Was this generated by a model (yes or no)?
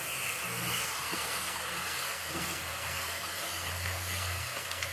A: yes